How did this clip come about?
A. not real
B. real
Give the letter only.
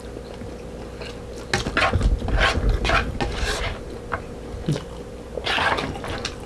B